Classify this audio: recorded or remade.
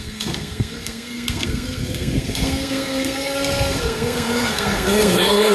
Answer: remade